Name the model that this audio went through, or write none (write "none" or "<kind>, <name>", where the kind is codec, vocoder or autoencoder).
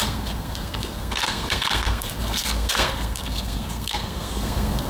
codec, SNAC